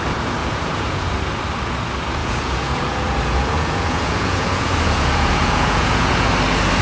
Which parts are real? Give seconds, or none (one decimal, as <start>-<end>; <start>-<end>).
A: 0.0-0.4; 1.2-2.2; 6.3-6.8